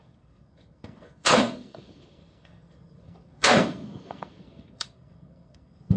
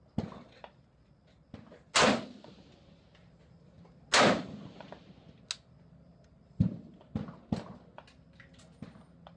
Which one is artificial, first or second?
first